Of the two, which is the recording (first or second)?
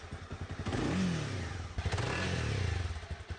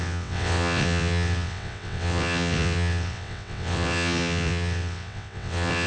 first